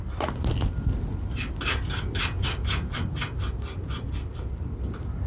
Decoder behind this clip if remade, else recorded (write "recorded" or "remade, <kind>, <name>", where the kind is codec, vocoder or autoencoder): recorded